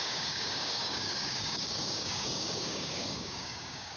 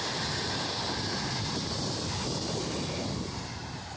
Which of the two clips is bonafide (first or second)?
second